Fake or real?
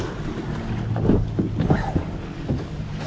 real